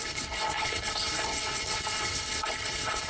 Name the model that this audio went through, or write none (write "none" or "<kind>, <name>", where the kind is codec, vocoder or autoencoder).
codec, HILCodec